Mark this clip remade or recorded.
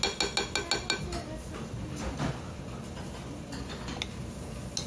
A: recorded